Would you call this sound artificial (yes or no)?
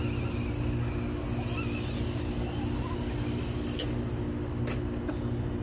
no